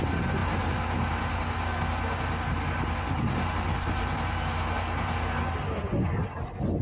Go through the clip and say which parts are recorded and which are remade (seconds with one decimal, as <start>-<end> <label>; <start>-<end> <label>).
0.0-6.8 recorded